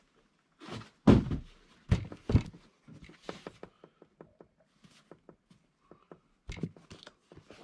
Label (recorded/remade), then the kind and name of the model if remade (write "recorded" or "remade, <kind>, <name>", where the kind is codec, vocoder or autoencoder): recorded